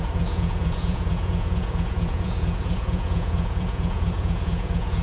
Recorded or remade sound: remade